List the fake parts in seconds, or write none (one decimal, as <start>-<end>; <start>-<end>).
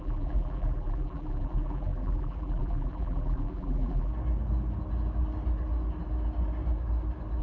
0.0-4.1